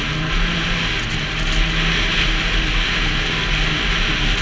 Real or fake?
real